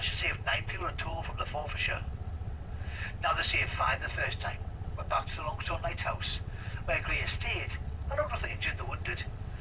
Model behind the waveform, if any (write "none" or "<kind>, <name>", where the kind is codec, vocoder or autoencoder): vocoder, WaveNeXt